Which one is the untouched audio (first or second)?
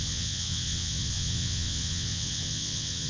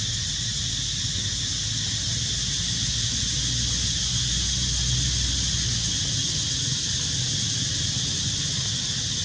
second